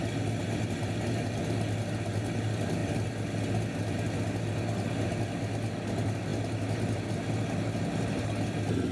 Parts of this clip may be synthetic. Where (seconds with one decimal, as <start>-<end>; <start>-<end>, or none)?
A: none